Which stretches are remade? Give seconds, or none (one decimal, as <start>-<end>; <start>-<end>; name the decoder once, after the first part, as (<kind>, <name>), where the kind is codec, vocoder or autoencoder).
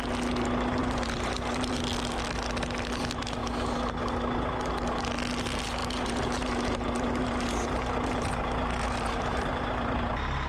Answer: 0.8-1.7 (vocoder, BigVGAN v2); 5.8-10.1